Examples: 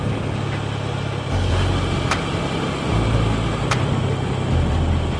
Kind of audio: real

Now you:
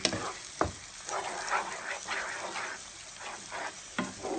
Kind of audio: real